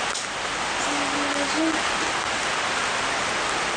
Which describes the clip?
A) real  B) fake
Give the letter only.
A